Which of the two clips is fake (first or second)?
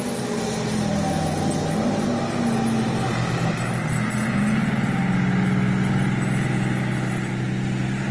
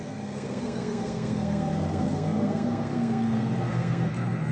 second